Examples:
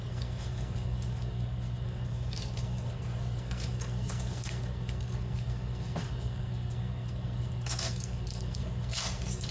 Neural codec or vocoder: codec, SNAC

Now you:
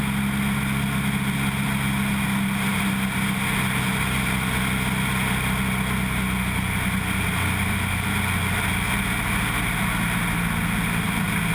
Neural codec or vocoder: none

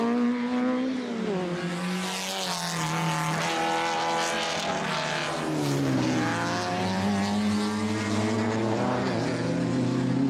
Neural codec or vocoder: none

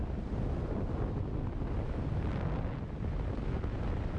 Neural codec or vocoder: none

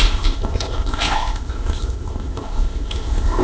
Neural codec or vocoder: codec, ZipCodec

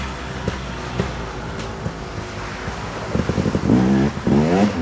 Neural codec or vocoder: none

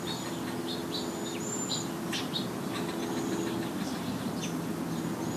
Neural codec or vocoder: none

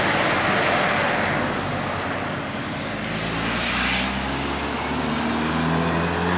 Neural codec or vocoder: none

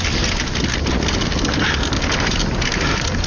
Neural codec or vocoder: none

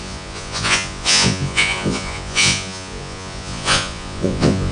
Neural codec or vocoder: vocoder, Vocos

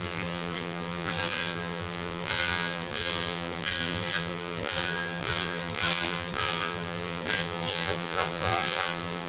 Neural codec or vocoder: vocoder, BigVGAN v2